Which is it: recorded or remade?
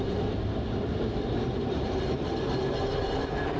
remade